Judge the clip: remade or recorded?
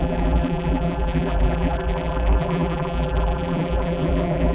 remade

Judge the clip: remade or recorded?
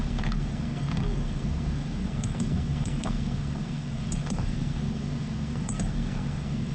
remade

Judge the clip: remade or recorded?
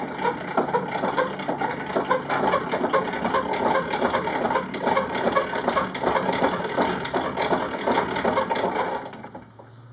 recorded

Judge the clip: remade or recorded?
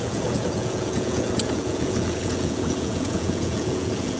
remade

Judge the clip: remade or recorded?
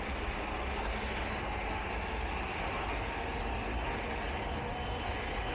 recorded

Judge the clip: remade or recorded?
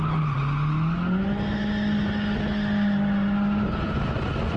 recorded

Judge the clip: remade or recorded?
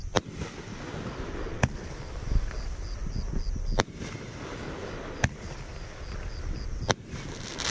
recorded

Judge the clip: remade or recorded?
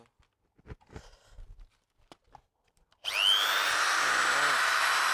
recorded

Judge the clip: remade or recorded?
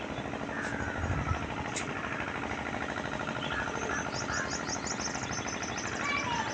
recorded